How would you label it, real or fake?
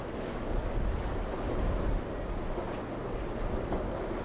real